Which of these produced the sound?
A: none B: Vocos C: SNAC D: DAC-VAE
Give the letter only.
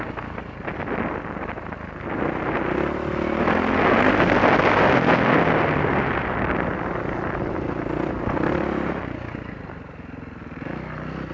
A